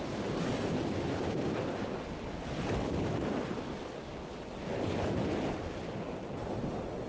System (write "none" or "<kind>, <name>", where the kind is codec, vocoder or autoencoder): none